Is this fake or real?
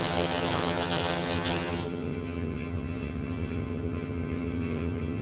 fake